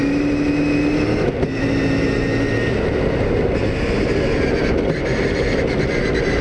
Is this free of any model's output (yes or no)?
yes